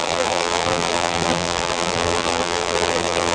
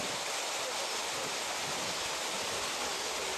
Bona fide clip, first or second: second